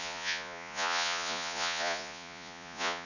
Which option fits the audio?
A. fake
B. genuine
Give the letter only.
A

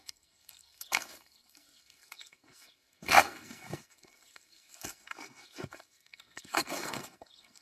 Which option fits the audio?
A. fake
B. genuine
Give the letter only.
A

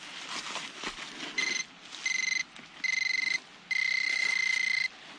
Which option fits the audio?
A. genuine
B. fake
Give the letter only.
A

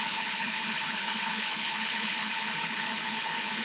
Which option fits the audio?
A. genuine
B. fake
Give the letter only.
B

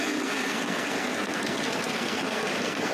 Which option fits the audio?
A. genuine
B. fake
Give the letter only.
B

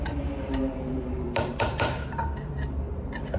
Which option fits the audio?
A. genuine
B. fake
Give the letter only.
B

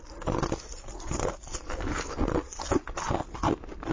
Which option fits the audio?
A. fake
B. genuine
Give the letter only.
B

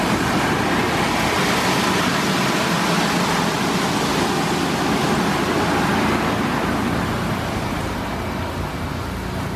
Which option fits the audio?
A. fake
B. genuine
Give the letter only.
B